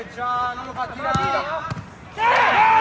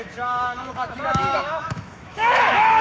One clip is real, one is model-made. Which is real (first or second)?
first